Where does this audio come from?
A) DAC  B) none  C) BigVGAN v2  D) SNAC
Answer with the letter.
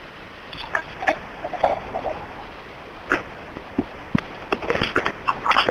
B